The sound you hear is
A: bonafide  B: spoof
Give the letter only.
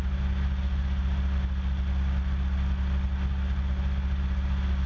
A